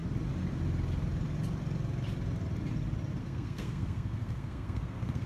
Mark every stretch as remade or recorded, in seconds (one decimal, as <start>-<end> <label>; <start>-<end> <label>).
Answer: 0.0-3.2 recorded; 3.2-5.3 remade